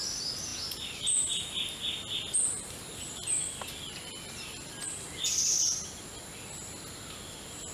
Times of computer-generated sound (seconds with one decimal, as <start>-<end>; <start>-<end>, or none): none